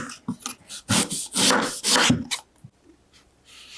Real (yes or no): yes